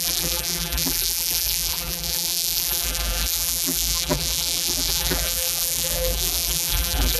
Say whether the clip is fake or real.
fake